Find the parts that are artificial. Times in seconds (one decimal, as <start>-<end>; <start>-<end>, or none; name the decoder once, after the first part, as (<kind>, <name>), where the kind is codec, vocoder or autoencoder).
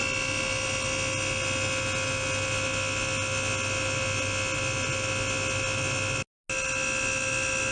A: none